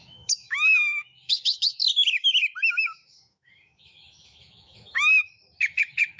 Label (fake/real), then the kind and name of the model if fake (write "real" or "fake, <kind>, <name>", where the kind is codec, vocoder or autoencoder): fake, autoencoder, DAC-VAE